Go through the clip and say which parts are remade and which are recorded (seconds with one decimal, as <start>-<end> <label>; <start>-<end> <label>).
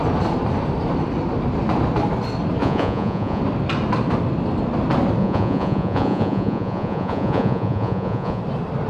0.0-2.6 recorded; 2.6-3.4 remade; 3.4-5.2 recorded; 5.2-8.4 remade; 8.4-8.9 recorded